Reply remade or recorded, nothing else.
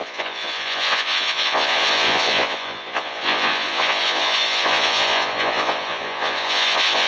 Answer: remade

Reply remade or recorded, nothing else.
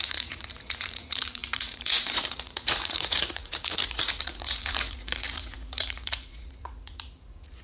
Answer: remade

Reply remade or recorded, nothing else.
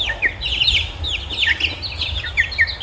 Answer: recorded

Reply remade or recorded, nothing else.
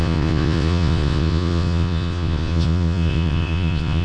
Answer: remade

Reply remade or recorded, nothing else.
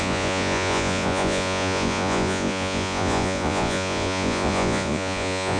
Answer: remade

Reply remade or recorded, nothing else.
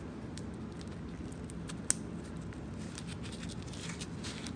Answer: recorded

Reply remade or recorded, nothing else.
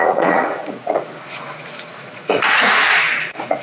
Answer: remade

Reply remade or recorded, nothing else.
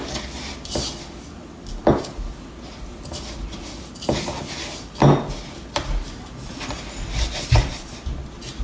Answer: recorded